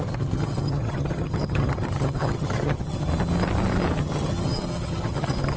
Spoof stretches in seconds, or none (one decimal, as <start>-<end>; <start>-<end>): 0.0-3.1; 4.0-5.6